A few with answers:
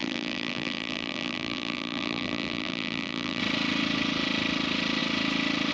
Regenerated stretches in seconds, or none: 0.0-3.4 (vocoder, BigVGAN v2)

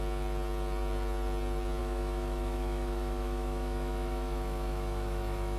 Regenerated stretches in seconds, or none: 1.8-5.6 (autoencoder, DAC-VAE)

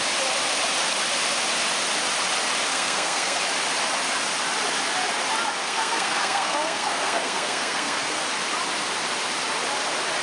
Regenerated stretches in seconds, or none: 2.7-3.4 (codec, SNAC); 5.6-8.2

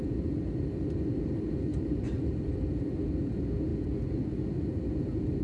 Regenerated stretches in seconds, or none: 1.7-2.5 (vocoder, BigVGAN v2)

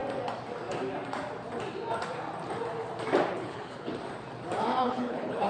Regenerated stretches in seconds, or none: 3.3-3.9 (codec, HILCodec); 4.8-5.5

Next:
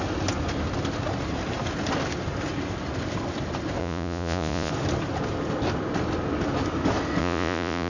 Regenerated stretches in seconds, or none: 3.8-4.7 (vocoder, Vocos); 7.2-7.9

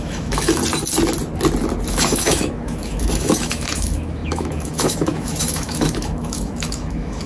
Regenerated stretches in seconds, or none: 0.0-0.6 (autoencoder, DAC-VAE); 1.9-7.3

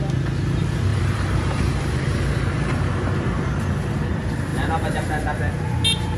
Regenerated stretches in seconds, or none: 0.9-3.1 (vocoder, BigVGAN v2)